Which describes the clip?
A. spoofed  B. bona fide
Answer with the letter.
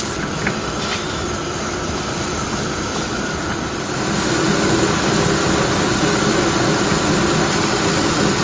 B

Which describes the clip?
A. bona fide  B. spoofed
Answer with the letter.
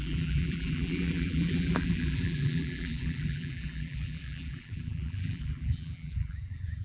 B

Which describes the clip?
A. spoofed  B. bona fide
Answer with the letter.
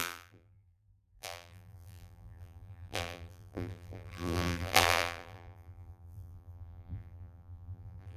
A